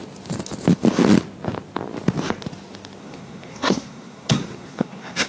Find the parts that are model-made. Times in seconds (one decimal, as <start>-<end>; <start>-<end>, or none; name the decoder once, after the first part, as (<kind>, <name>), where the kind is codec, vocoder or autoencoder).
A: 3.0-5.3 (codec, SNAC)